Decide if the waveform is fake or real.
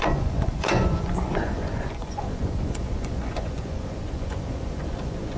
fake